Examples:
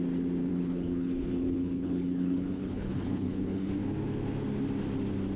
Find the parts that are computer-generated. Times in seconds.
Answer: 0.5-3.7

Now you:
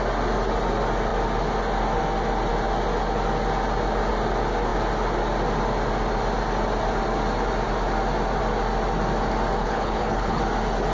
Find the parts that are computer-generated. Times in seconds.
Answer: 9.6-10.4

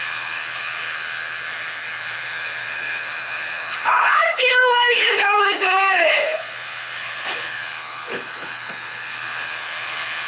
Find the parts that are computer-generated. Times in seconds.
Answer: 0.0-10.3

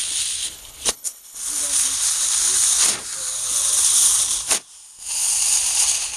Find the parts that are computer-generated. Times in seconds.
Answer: 0.4-1.6